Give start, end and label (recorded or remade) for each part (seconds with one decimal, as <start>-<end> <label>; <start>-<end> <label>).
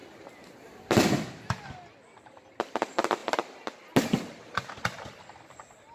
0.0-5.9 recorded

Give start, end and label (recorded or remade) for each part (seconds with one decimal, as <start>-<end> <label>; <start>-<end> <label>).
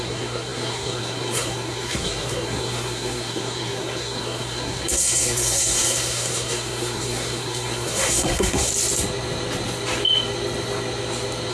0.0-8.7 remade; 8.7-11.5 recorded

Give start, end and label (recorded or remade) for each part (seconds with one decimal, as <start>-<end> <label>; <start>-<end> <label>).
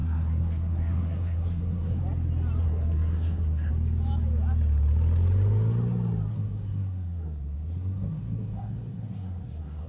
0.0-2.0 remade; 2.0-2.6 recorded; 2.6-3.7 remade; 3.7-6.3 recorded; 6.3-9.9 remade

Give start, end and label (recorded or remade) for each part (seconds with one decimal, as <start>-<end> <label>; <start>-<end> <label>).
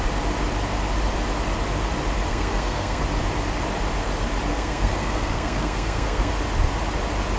0.0-2.3 recorded; 2.3-3.0 remade; 3.0-4.5 recorded; 4.5-6.3 remade; 6.3-7.4 recorded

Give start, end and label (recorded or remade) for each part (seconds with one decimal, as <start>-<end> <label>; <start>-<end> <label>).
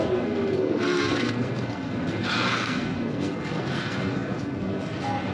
0.0-5.3 remade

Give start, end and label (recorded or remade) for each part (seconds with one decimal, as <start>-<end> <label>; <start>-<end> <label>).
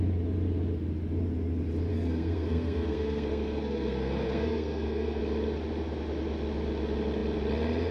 0.0-1.9 recorded; 1.9-5.2 remade; 5.2-7.9 recorded